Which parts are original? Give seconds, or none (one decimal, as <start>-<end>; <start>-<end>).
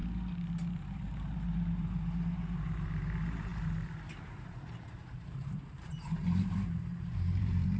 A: 0.0-0.7